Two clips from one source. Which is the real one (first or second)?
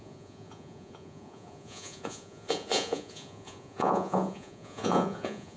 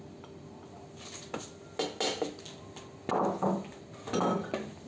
second